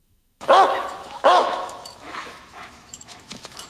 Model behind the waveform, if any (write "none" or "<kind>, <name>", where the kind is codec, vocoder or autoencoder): autoencoder, DAC-VAE